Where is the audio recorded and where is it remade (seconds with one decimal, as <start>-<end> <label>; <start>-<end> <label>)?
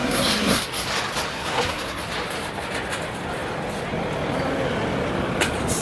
0.0-0.6 remade; 0.6-1.3 recorded; 1.3-2.0 remade; 2.0-5.8 recorded